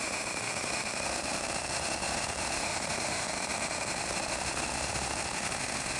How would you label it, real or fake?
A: fake